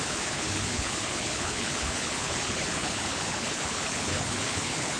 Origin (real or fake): fake